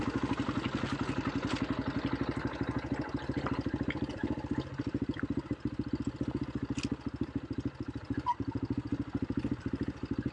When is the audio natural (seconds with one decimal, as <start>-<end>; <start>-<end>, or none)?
0.0-10.3